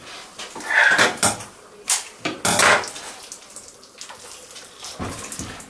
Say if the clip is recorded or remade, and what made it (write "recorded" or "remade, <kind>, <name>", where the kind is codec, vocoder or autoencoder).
recorded